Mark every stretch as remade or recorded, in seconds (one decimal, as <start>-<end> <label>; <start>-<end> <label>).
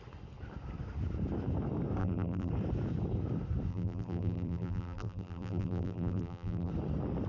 0.0-2.0 recorded; 2.0-2.5 remade; 2.5-3.7 recorded; 3.7-6.7 remade; 6.7-7.3 recorded